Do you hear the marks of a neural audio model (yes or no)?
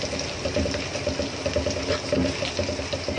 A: yes